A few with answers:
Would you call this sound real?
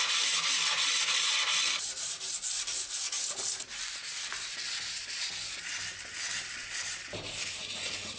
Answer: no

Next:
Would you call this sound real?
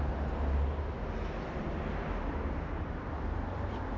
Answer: yes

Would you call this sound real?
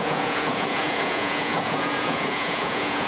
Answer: no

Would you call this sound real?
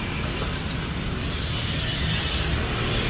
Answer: yes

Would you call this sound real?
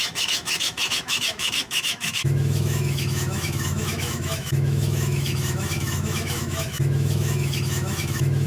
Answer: no